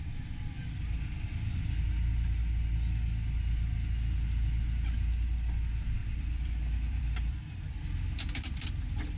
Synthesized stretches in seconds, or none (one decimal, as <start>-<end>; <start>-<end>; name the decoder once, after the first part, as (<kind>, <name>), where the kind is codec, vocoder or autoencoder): 6.0-7.7 (vocoder, BigVGAN v2)